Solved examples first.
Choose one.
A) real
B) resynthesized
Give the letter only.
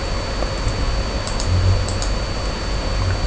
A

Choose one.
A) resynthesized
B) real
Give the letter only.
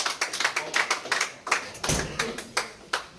B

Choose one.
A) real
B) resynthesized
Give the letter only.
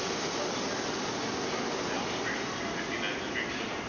A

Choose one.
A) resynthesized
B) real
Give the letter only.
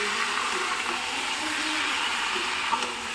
B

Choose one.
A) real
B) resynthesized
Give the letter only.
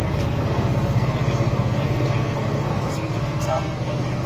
B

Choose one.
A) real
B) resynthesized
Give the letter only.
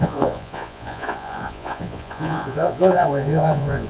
B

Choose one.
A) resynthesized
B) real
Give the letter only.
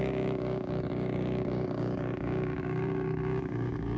A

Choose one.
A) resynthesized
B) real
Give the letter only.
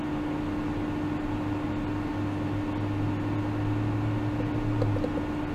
B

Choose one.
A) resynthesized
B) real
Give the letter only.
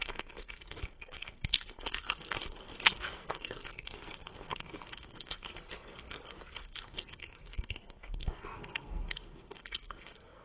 A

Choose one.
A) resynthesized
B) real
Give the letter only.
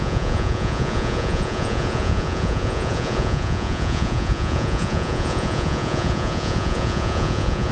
A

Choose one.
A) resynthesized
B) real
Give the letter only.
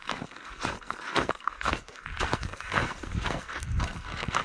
A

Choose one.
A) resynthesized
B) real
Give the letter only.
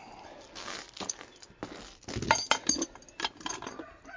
B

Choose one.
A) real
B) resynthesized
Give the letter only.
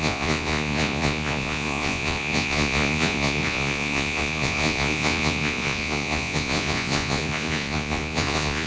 B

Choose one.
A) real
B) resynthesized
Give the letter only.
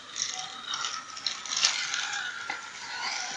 A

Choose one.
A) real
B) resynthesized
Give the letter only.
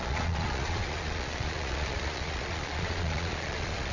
B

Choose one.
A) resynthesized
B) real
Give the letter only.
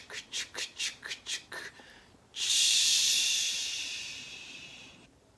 A